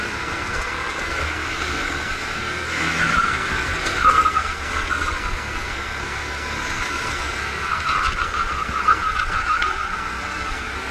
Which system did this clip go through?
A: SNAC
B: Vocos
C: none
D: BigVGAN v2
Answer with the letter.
A